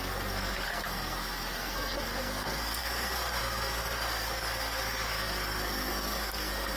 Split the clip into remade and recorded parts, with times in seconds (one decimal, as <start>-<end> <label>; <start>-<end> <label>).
0.0-6.8 remade